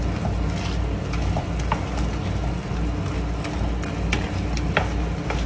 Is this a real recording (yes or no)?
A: yes